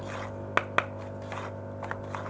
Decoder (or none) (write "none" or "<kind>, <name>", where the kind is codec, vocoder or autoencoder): none